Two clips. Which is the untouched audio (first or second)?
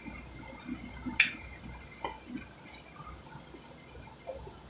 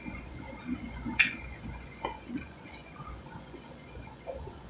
first